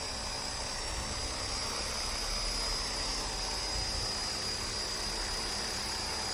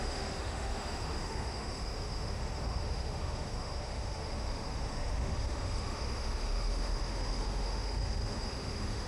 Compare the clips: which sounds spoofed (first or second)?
second